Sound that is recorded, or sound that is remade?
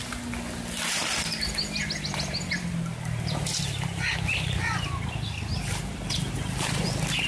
recorded